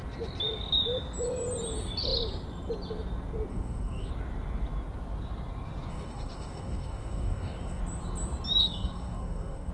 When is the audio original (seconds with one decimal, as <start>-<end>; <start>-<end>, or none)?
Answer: 0.0-3.5; 4.1-5.9; 7.8-8.6